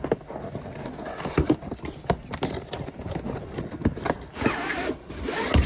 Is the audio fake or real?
real